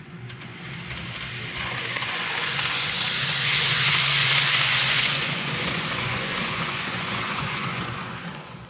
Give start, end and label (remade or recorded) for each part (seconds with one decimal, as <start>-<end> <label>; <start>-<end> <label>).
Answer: 0.0-0.5 remade; 0.5-1.5 recorded; 1.5-8.7 remade